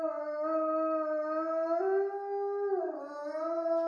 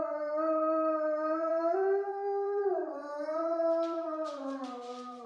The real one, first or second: first